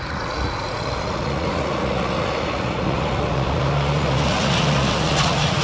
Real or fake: fake